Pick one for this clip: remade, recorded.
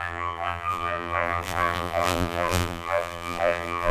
remade